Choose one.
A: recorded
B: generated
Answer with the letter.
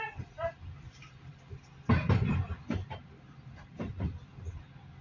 A